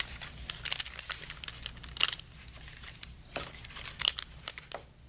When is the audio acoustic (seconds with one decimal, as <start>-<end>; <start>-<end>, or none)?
0.0-2.5; 3.7-5.1